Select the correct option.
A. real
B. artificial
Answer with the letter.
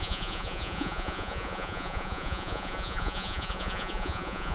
B